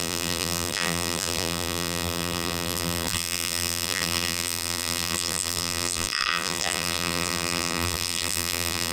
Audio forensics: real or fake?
fake